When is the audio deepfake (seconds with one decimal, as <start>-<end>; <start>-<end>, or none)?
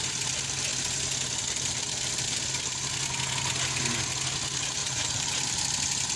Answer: 4.8-5.6